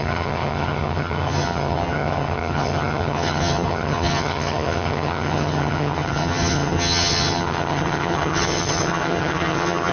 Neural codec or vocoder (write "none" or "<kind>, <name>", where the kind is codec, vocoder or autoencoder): vocoder, HiFi-GAN